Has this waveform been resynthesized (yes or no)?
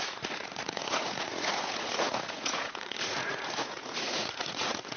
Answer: yes